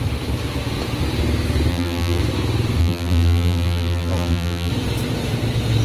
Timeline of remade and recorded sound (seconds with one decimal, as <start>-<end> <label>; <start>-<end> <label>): 0.0-1.7 recorded; 1.7-2.2 remade; 2.2-2.8 recorded; 2.8-4.7 remade; 4.7-5.8 recorded